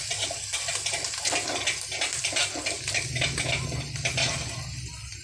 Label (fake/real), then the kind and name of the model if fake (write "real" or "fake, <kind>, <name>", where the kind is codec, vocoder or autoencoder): real